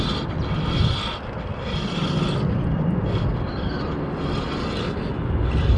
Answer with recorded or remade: recorded